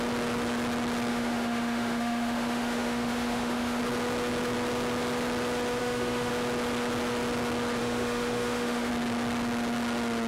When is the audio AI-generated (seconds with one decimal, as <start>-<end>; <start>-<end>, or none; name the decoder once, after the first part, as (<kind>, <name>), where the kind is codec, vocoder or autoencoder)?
1.1-3.8 (autoencoder, DAC-VAE); 5.8-6.3; 7.8-8.9